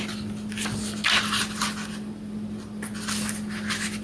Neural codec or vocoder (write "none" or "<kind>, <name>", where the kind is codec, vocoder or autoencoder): none